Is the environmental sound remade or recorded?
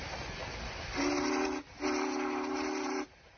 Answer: recorded